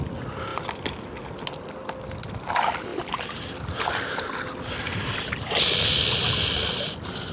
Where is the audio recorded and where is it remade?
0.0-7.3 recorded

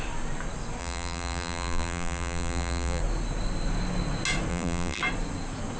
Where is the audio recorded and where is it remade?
0.0-0.8 recorded; 0.8-3.0 remade; 3.0-4.5 recorded; 4.5-5.0 remade; 5.0-5.8 recorded